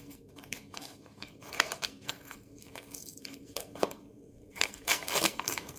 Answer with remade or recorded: remade